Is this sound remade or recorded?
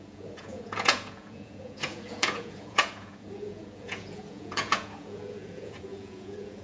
remade